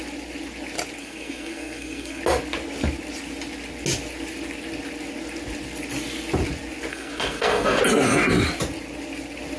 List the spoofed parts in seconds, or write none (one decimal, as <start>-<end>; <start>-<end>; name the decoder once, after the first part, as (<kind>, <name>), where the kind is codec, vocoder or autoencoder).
1.0-2.2 (codec, SNAC); 6.9-7.8